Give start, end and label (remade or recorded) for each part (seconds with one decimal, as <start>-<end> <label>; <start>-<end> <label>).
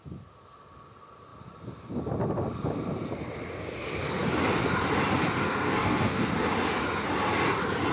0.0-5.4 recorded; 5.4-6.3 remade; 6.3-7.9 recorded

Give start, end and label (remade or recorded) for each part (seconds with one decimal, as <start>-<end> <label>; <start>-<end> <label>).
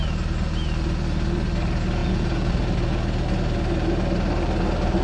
0.0-2.0 recorded; 2.0-2.5 remade; 2.5-5.0 recorded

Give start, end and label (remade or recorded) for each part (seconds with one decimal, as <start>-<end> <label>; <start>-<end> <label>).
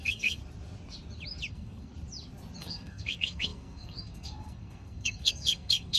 0.0-0.4 remade; 0.4-1.5 recorded; 1.5-1.9 remade; 1.9-2.6 recorded; 2.6-6.0 remade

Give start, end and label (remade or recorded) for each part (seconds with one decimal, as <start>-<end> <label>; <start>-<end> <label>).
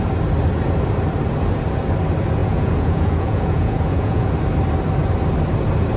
0.0-2.4 recorded; 2.4-4.3 remade; 4.3-6.0 recorded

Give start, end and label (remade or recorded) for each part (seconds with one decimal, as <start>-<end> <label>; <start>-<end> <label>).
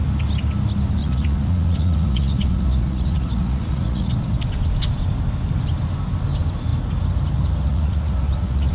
0.0-1.0 recorded; 1.0-4.1 remade; 4.1-7.7 recorded; 7.7-8.7 remade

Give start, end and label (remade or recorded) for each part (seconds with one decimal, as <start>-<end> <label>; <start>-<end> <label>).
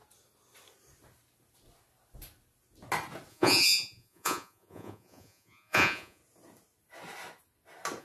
0.0-3.3 recorded; 3.3-6.2 remade; 6.2-8.0 recorded